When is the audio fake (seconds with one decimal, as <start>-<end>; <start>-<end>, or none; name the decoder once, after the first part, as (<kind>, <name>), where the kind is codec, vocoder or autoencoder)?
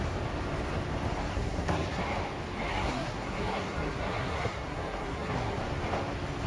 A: 1.3-2.0 (codec, SNAC); 2.7-5.6